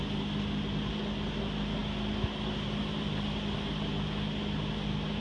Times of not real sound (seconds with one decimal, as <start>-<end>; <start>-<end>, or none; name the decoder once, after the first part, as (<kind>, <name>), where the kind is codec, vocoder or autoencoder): none